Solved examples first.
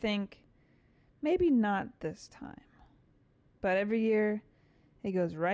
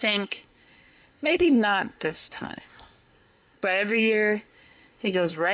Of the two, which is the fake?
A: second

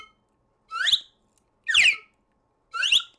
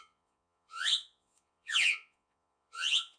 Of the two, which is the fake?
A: second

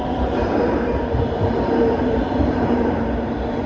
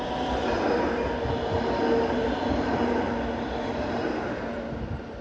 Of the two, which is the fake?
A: first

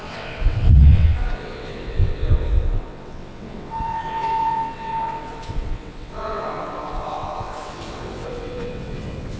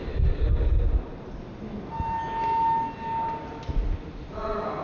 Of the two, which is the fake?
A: first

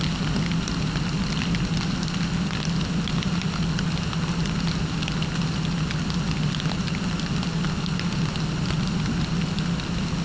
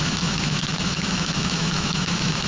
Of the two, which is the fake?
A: second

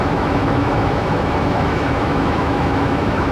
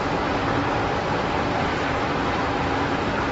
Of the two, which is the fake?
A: first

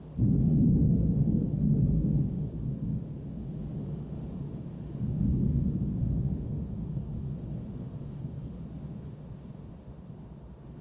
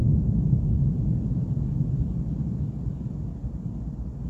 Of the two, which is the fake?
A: first